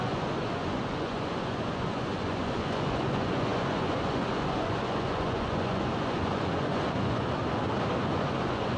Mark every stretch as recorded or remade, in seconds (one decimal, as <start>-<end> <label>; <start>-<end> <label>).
0.0-7.4 remade; 7.4-8.0 recorded; 8.0-8.8 remade